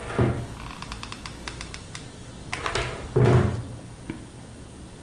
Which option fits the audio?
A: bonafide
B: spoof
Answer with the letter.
A